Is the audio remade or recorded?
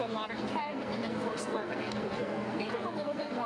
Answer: remade